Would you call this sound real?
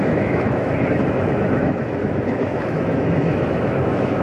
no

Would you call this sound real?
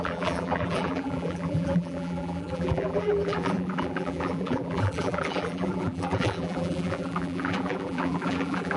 no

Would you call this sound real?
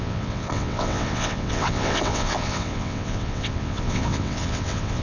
no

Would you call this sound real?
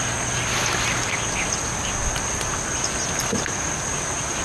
yes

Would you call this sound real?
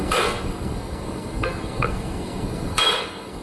no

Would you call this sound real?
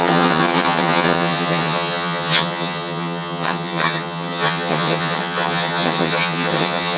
no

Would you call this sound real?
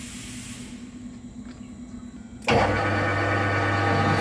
yes